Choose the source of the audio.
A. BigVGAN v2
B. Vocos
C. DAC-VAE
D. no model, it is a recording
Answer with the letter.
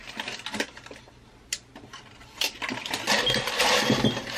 A